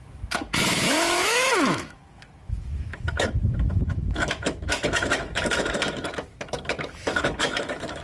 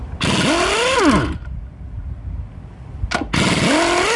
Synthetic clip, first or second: first